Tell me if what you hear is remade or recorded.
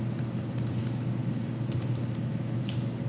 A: recorded